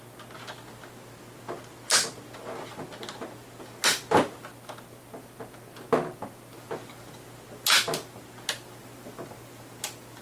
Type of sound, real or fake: real